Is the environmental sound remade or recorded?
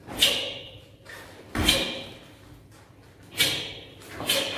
recorded